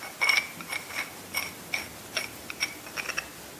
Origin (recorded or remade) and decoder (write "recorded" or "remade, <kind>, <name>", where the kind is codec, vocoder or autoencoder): recorded